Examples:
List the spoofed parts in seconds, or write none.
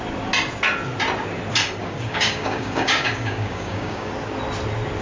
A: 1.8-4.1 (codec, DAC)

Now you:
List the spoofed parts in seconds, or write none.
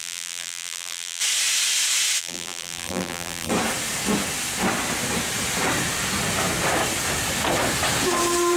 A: 0.0-1.2 (vocoder, BigVGAN v2); 2.2-3.5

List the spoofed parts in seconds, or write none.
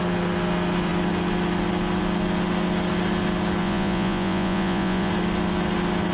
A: 3.6-5.1 (vocoder, Vocos)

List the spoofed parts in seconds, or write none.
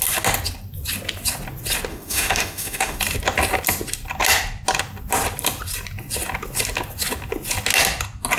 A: 1.9-3.0 (autoencoder, DAC-VAE)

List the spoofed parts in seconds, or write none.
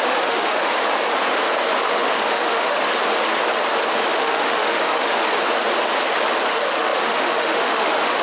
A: 0.0-0.7 (autoencoder, DAC-VAE); 1.8-2.9; 4.1-5.2; 6.5-8.2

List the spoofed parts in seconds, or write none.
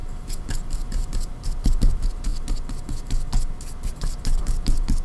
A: 0.0-2.3 (vocoder, BigVGAN v2); 3.9-5.0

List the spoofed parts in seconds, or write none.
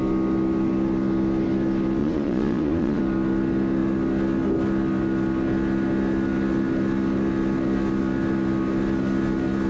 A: 2.0-3.0 (vocoder, Vocos)